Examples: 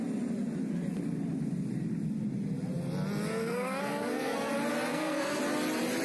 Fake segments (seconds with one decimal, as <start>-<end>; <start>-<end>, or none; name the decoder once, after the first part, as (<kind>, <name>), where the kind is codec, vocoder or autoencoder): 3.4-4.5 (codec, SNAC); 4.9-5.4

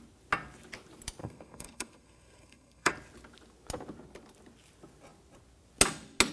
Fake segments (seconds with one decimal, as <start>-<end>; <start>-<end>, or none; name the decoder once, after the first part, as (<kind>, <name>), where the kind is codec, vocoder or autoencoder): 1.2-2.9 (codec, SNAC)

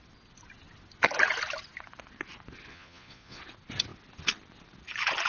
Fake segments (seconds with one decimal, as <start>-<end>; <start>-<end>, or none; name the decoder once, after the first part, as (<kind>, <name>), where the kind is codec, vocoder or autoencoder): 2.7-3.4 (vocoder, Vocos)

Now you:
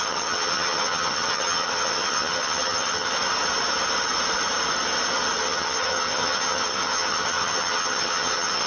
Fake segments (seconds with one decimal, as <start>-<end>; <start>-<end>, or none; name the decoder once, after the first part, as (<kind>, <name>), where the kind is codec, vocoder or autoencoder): 0.0-3.2 (vocoder, HiFi-GAN); 5.4-8.7

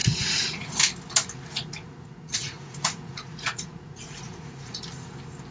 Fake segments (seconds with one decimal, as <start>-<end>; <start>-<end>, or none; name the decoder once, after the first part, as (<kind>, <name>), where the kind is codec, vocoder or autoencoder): 0.0-0.8 (vocoder, Vocos); 1.5-4.8

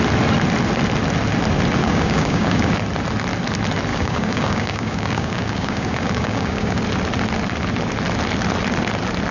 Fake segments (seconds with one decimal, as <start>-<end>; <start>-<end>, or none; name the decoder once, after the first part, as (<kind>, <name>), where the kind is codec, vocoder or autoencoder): 1.8-2.7 (codec, DAC); 3.9-6.8